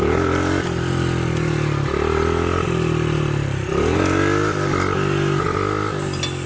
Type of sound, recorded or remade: recorded